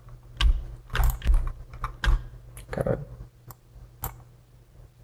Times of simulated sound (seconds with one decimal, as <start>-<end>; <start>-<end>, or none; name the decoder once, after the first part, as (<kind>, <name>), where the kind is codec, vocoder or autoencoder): none